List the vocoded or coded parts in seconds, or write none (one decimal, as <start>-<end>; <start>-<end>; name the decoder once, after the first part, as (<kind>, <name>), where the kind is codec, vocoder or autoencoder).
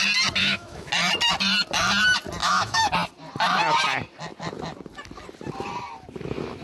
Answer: 0.4-0.9 (autoencoder, DAC-VAE); 2.4-2.9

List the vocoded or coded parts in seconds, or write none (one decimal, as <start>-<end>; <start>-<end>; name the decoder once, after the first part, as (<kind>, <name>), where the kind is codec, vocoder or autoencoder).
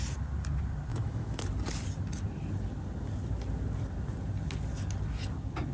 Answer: 0.9-1.4 (autoencoder, DAC-VAE)